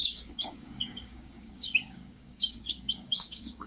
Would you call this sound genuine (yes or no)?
no